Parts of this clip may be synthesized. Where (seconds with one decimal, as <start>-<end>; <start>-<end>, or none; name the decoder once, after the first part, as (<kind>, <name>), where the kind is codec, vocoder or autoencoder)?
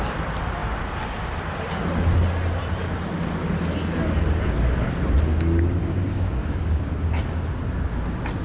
5.8-6.8 (codec, DAC)